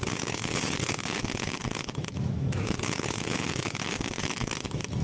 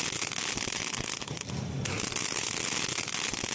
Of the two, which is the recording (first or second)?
second